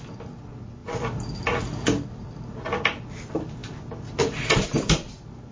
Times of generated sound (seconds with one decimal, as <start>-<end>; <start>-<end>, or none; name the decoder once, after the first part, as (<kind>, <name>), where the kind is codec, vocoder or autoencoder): none